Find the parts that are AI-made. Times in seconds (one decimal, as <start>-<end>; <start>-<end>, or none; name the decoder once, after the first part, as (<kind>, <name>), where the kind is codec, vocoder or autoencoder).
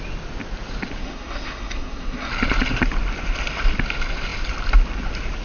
1.0-2.3 (codec, SNAC)